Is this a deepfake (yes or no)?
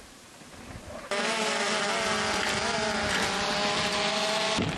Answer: no